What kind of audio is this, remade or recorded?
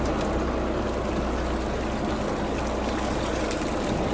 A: recorded